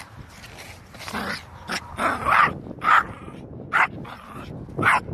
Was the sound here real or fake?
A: real